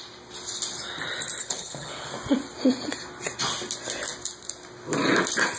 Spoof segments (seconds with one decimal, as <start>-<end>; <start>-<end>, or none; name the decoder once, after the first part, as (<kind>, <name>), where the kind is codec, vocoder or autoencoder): 1.4-2.1 (codec, HILCodec)